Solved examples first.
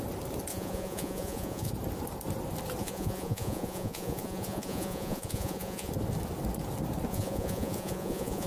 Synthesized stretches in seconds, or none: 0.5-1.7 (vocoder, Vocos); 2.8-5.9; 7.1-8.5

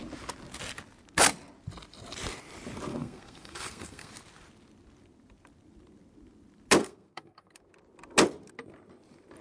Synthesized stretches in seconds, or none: 2.9-4.1 (codec, SNAC); 6.8-7.6